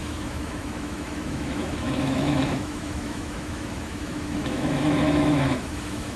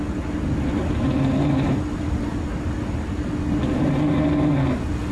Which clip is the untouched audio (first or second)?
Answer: second